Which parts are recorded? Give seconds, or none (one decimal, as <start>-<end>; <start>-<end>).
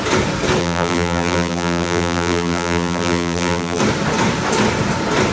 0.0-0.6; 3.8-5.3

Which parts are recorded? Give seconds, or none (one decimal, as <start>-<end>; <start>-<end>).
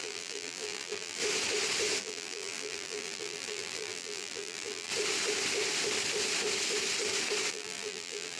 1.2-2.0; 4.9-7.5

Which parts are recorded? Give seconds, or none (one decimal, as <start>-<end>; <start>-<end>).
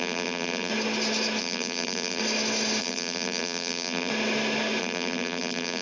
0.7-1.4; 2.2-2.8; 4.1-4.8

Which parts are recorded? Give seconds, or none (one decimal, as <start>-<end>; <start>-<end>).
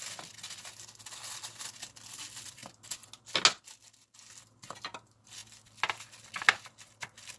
0.0-7.4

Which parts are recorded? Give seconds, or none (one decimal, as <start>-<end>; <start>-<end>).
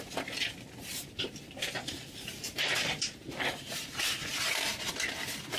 0.0-0.9; 4.3-5.6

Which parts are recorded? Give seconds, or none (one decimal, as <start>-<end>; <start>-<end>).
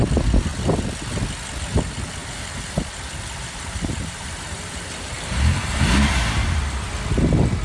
0.0-2.2; 5.8-6.4; 6.9-7.6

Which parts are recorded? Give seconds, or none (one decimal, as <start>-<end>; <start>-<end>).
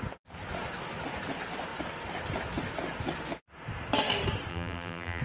0.0-4.5